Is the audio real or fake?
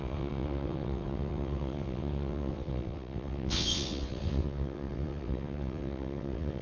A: fake